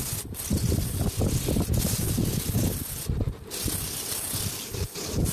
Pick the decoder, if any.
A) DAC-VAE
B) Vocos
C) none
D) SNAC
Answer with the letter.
C